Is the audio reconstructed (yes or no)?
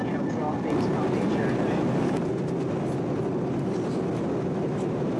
no